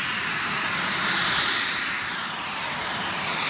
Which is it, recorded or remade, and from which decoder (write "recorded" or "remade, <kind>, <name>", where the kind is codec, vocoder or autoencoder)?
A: remade, vocoder, BigVGAN v2